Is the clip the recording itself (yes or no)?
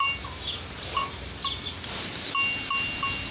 yes